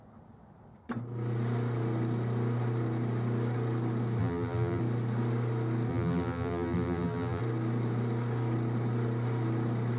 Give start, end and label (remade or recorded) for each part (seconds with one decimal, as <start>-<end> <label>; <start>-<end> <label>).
0.0-4.2 recorded; 4.2-4.8 remade; 4.8-5.9 recorded; 5.9-7.4 remade; 7.4-10.0 recorded